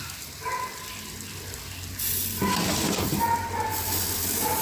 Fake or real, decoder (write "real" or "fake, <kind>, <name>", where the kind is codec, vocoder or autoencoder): fake, vocoder, BigVGAN v2